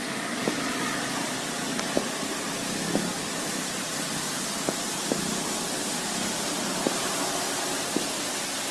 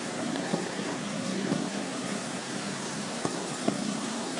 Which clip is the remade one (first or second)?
second